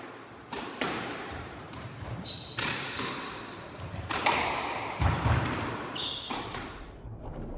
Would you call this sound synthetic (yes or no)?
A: yes